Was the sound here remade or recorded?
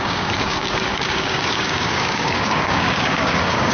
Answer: remade